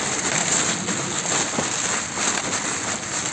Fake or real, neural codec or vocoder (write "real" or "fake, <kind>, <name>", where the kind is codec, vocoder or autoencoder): real